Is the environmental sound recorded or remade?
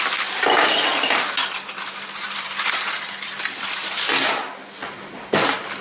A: recorded